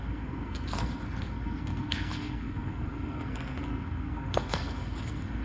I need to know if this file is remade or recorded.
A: remade